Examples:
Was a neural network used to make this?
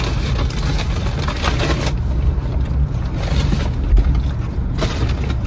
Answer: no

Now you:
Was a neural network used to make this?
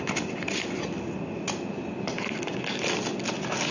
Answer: no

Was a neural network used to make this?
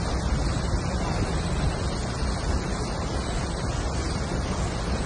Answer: no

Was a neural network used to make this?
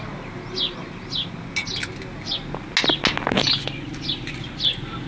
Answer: no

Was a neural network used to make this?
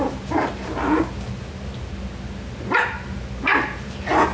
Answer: no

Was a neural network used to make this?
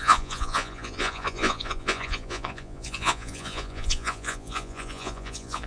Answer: yes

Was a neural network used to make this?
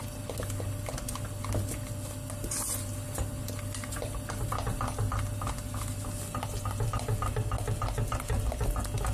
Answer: no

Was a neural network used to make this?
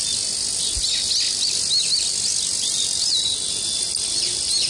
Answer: no